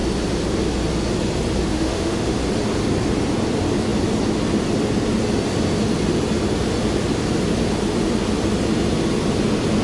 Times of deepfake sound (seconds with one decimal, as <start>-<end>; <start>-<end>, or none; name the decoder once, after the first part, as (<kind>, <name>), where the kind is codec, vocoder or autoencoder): 1.7-2.4 (autoencoder, DAC-VAE)